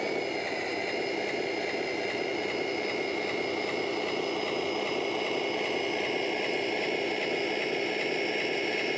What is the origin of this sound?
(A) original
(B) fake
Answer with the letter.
A